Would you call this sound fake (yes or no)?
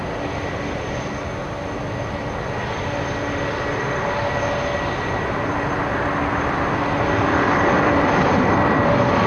no